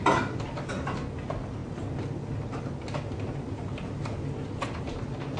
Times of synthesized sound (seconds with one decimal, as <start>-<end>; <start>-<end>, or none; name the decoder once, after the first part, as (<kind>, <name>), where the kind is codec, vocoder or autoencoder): none